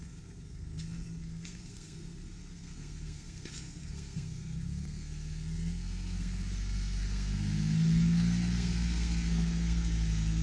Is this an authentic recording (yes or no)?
no